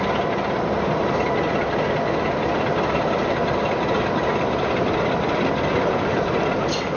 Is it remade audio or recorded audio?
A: recorded